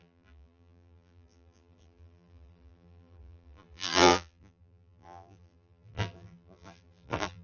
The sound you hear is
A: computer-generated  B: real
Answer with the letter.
A